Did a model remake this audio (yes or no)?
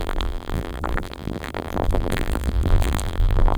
yes